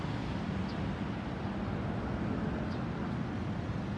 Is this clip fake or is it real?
real